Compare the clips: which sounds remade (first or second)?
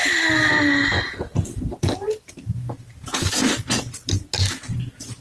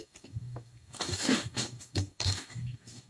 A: second